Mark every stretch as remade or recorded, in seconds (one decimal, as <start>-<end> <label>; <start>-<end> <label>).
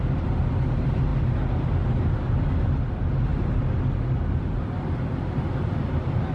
0.0-6.3 recorded